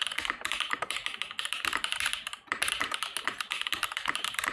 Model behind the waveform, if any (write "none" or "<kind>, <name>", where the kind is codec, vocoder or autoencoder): vocoder, BigVGAN v2